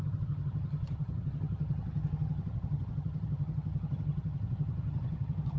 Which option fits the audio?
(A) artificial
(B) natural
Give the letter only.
A